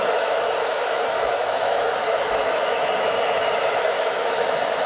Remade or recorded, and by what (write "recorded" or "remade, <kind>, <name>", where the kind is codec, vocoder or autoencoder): remade, autoencoder, DAC-VAE